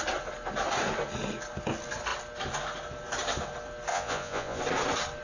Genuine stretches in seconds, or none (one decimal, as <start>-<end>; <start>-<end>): 0.0-3.9; 4.6-5.2